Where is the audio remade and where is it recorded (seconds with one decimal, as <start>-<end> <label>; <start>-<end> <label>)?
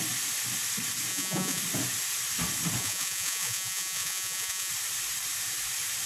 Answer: 0.0-1.1 recorded; 1.1-1.6 remade; 1.6-2.8 recorded; 2.8-4.7 remade; 4.7-6.1 recorded